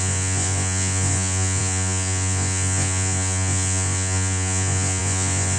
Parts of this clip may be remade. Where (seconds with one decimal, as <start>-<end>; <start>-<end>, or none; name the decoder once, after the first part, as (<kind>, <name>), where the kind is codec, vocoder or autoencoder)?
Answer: 0.0-5.6 (vocoder, Vocos)